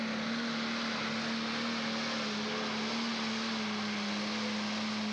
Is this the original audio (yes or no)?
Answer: yes